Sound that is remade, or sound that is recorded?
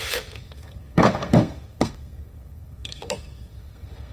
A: remade